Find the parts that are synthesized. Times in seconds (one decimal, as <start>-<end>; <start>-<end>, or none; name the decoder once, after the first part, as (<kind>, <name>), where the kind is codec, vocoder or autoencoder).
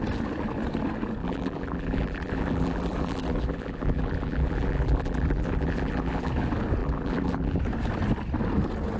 1.2-6.3 (vocoder, BigVGAN v2); 6.8-7.6